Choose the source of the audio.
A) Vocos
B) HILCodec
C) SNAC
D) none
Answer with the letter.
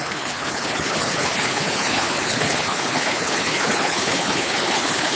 B